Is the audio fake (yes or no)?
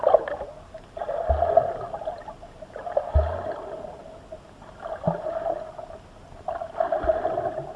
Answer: no